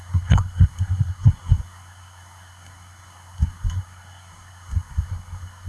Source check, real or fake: fake